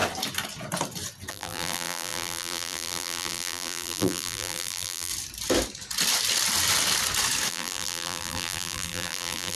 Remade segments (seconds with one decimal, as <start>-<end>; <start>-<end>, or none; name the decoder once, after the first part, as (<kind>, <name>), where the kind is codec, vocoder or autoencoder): 1.3-5.1 (vocoder, BigVGAN v2); 7.5-9.5